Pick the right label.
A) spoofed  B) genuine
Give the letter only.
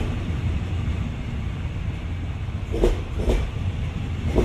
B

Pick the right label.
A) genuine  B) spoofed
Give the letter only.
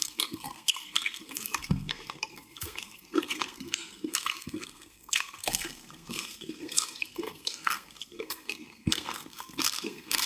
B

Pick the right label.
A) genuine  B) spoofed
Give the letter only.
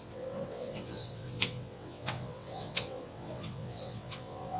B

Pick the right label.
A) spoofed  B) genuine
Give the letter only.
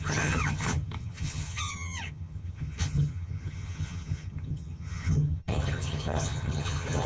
A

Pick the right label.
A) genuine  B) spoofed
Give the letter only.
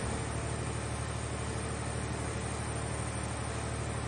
A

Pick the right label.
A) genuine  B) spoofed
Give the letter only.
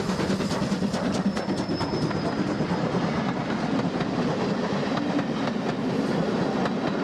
A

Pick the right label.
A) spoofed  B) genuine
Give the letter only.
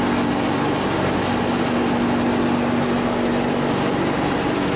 B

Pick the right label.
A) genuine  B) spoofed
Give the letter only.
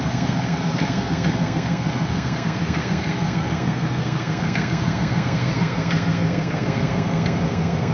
B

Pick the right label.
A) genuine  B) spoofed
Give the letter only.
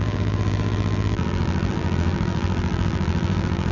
B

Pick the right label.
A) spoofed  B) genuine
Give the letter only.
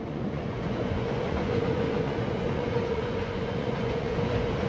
A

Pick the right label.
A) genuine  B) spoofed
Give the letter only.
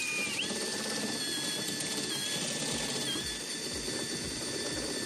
B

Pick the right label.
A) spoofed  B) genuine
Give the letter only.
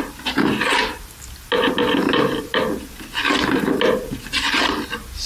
B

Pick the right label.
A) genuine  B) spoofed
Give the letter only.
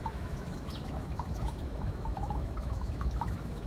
B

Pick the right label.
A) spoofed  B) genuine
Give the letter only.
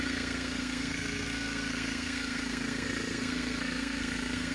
A